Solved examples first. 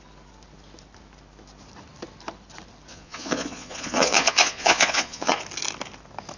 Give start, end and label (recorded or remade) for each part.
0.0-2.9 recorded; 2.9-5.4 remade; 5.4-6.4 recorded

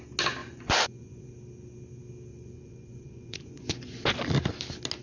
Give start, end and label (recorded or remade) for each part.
0.0-0.4 recorded; 0.4-1.3 remade; 1.3-2.3 recorded; 2.3-4.0 remade; 4.0-5.0 recorded

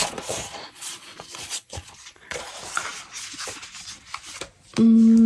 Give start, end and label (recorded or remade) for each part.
0.0-2.5 remade; 2.5-5.3 recorded

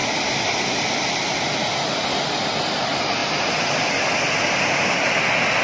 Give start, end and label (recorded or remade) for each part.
0.0-5.6 recorded

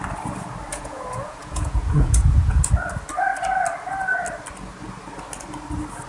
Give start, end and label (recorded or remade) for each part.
0.0-0.7 recorded; 0.7-2.6 remade; 2.6-6.1 recorded

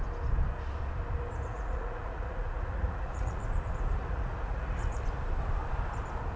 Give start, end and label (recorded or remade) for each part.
0.0-1.5 recorded; 1.5-3.4 remade; 3.4-4.0 recorded; 4.0-5.0 remade; 5.0-6.4 recorded